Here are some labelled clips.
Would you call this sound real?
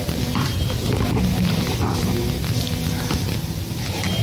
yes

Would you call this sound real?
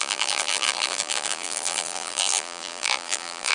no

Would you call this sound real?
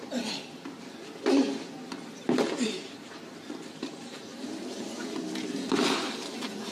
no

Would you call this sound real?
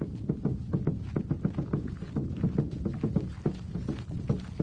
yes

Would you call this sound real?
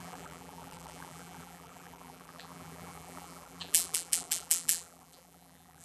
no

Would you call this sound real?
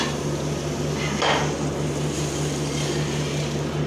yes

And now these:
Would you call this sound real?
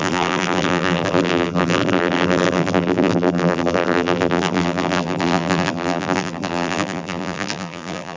no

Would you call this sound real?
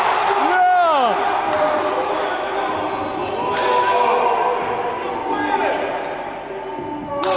yes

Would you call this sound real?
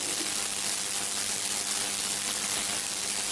yes